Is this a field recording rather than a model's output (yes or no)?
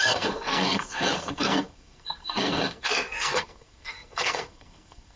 no